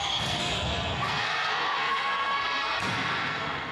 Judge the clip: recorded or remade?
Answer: remade